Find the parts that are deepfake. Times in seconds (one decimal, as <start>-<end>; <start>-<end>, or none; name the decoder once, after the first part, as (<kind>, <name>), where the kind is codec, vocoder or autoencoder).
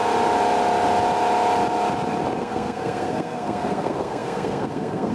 2.4-5.1 (codec, SNAC)